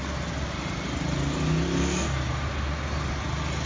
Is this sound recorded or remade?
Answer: recorded